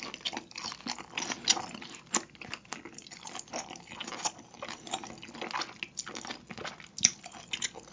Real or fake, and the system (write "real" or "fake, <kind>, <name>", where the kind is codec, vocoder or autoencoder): real